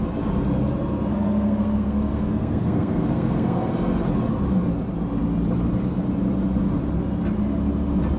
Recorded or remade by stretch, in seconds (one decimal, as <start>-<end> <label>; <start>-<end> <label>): 0.0-1.1 recorded; 1.1-3.7 remade; 3.7-8.2 recorded